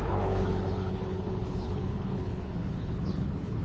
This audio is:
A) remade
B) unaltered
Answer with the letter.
A